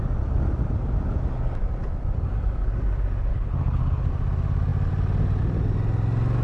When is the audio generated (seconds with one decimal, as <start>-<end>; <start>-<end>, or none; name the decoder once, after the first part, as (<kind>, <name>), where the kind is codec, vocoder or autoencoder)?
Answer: 3.3-4.1 (codec, HILCodec)